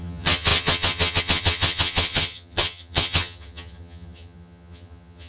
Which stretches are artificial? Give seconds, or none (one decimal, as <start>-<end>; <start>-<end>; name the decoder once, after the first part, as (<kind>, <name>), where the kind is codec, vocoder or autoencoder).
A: 0.0-5.3 (vocoder, HiFi-GAN)